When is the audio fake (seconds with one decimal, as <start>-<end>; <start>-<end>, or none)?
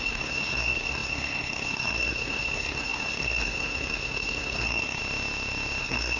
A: 0.0-5.0; 5.8-6.2